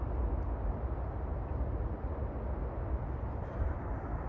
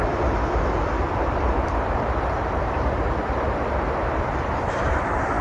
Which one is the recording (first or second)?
first